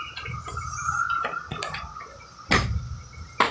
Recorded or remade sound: recorded